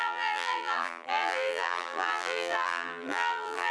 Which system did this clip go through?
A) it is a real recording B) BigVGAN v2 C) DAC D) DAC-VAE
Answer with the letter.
B